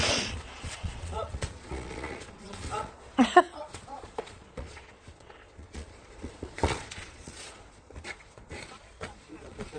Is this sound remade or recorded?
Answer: remade